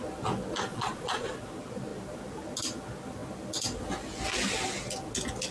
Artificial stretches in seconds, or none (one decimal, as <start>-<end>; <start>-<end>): 0.7-1.3